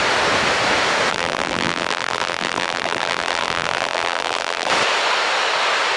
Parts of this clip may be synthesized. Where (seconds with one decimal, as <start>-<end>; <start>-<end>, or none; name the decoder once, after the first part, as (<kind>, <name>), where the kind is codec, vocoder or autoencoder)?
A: 1.1-4.7 (vocoder, BigVGAN v2)